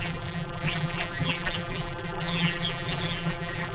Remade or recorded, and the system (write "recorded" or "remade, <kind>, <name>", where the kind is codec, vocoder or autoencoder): remade, vocoder, BigVGAN v2